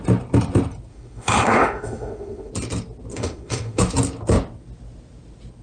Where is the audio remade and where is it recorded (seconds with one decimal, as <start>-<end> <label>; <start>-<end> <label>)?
0.0-0.9 recorded; 0.9-2.5 remade; 2.5-3.1 recorded; 3.1-3.8 remade; 3.8-5.6 recorded